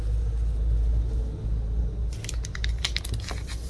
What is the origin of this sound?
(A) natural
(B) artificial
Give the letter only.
A